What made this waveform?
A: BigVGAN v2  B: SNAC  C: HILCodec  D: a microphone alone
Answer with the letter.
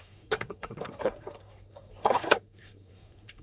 B